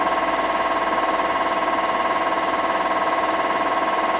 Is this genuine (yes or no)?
yes